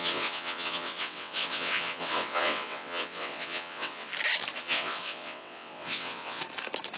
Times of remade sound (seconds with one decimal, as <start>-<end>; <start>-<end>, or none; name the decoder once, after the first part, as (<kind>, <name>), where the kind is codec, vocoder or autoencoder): 0.0-4.1 (vocoder, WaveNeXt); 4.6-6.4